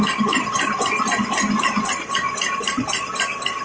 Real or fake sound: real